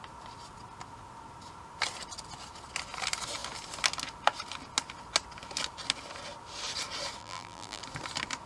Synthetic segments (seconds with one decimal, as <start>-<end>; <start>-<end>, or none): 7.2-7.8